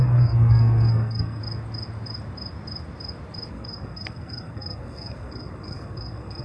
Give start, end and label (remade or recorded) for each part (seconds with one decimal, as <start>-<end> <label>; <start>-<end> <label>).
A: 0.0-1.4 remade; 1.4-3.5 recorded; 3.5-6.4 remade